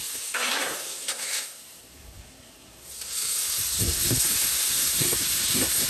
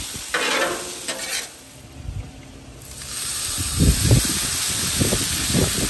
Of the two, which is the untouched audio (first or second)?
second